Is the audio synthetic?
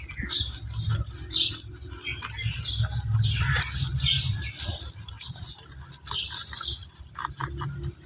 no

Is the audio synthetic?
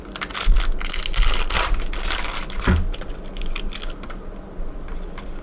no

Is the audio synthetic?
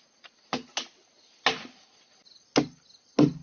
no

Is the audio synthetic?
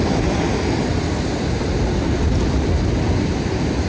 no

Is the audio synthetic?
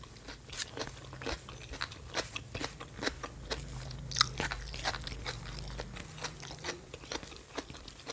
no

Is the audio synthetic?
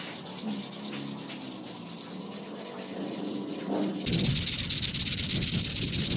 no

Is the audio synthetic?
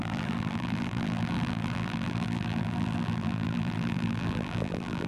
yes